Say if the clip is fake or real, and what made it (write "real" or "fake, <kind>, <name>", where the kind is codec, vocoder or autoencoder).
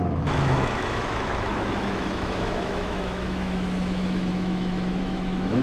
fake, autoencoder, DAC-VAE